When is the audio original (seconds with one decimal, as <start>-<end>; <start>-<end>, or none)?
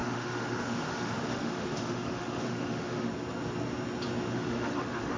3.1-4.3